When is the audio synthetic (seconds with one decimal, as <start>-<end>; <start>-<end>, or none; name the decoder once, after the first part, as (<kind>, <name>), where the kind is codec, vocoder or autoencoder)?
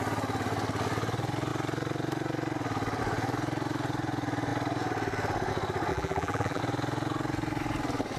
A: 5.9-6.6 (vocoder, BigVGAN v2)